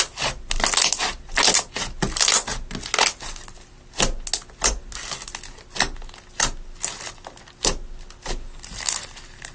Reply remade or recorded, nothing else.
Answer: recorded